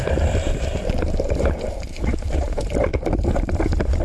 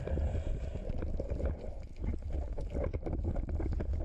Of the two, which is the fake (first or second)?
first